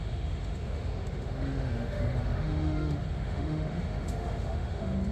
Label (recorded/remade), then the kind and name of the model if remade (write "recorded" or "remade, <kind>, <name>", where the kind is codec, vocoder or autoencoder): remade, autoencoder, DAC-VAE